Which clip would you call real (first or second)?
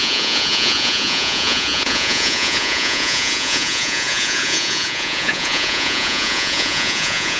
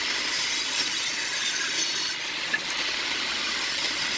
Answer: second